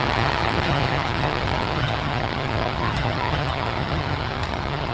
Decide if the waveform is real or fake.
fake